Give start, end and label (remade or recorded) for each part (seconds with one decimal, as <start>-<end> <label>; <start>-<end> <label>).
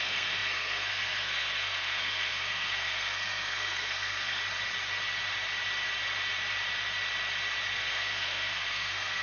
0.0-4.4 remade; 4.4-7.7 recorded; 7.7-9.2 remade